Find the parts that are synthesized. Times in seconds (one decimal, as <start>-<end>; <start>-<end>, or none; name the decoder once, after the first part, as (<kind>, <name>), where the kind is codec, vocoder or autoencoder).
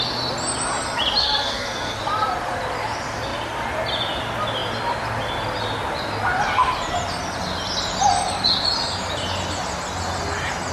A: 1.2-2.0 (codec, SNAC)